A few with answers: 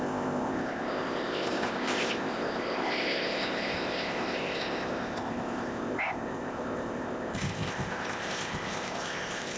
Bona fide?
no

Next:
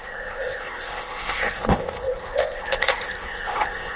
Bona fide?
no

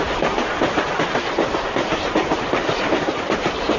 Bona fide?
yes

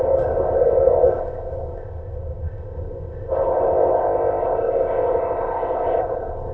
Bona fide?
no